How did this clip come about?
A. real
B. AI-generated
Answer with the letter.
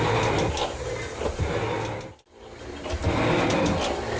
A